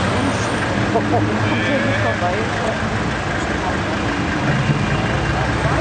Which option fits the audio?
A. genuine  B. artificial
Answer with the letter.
A